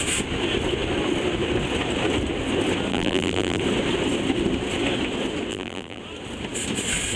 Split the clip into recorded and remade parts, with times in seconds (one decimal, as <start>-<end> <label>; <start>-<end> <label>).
0.0-2.9 recorded; 2.9-3.6 remade; 3.6-5.5 recorded; 5.5-6.0 remade; 6.0-7.2 recorded